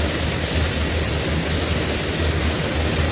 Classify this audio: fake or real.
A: real